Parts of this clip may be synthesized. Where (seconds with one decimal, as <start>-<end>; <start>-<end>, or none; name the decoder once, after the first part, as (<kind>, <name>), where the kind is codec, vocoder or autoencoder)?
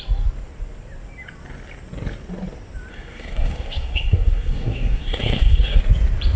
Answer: 2.9-5.8 (codec, SNAC)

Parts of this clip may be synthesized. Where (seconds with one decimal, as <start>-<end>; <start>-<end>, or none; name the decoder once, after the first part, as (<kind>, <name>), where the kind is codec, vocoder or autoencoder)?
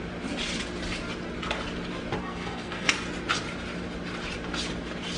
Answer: 2.2-2.9 (codec, SNAC)